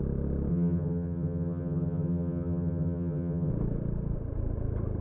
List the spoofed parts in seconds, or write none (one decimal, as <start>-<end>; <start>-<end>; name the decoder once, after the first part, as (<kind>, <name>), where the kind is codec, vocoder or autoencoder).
0.5-3.5 (vocoder, HiFi-GAN)